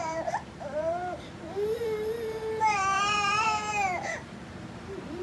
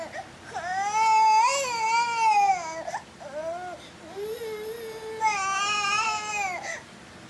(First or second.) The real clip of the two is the second